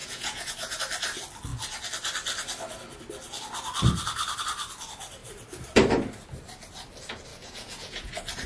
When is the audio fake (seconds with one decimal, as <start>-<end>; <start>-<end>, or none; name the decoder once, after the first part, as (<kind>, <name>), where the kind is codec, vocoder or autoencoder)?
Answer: 0.0-0.8 (vocoder, Vocos); 7.3-8.1